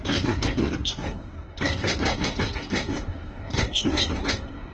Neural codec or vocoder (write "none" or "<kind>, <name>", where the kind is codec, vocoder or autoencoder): codec, SNAC